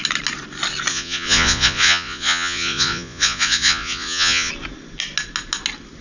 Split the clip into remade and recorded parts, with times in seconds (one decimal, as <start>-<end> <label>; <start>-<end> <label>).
0.0-0.9 recorded; 0.9-4.5 remade; 4.5-6.0 recorded